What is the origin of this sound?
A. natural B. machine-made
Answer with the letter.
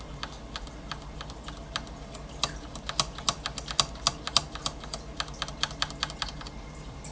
A